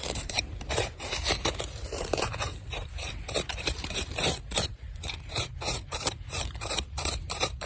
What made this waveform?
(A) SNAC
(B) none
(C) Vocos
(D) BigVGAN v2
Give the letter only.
D